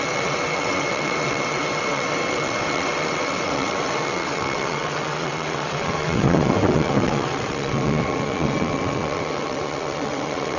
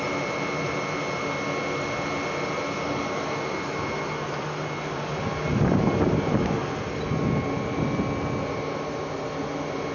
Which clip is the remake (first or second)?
first